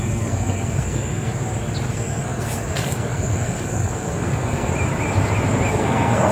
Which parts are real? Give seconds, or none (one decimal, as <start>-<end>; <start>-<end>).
1.3-1.9; 4.7-5.7